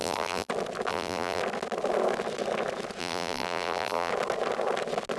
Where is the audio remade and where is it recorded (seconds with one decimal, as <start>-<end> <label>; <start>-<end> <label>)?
0.0-0.5 remade; 0.5-0.9 recorded; 0.9-1.4 remade; 1.4-3.0 recorded; 3.0-4.1 remade; 4.1-5.2 recorded